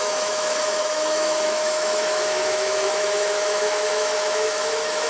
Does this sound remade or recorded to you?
remade